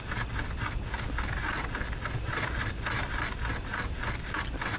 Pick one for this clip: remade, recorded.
recorded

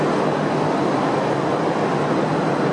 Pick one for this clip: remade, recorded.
recorded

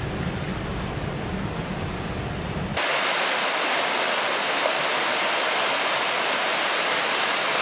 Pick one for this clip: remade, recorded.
recorded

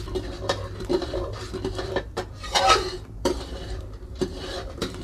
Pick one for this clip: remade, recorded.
remade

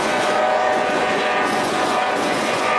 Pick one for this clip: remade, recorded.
remade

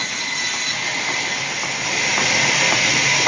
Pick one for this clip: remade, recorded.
recorded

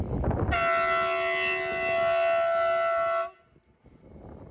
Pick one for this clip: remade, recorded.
recorded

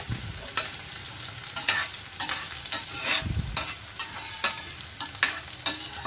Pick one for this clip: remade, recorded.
recorded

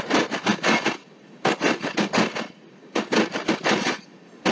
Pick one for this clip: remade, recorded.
recorded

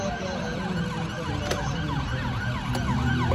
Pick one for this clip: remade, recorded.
recorded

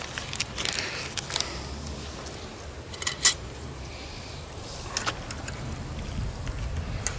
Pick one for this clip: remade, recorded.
recorded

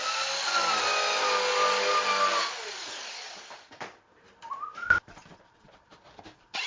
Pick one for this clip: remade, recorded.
recorded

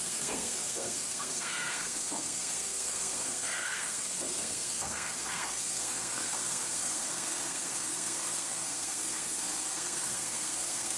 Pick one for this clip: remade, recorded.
remade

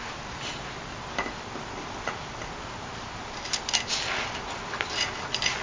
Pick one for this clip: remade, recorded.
recorded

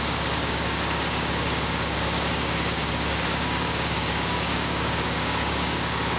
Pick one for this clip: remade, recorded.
remade